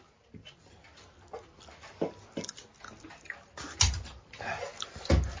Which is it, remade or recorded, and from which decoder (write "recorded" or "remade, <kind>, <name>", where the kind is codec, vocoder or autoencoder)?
recorded